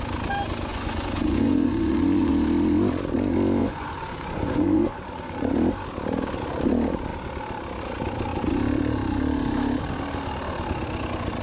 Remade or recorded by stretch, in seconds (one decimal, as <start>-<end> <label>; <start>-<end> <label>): 0.0-0.7 recorded; 0.7-2.3 remade; 2.3-3.6 recorded; 3.6-5.5 remade; 5.5-11.4 recorded

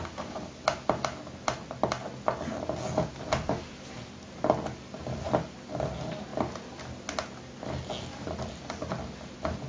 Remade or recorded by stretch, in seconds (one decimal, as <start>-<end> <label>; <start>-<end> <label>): 0.0-9.7 recorded

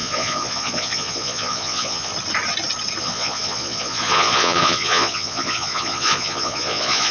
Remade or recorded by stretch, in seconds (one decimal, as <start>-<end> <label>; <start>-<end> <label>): 0.0-2.1 remade; 2.1-3.0 recorded; 3.0-7.1 remade